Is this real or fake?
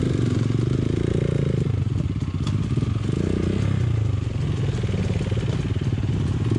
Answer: real